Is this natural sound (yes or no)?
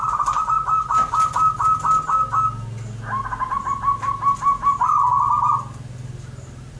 yes